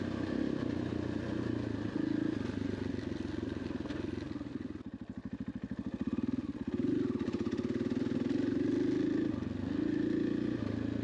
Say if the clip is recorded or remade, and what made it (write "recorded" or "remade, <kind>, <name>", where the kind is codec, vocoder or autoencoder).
recorded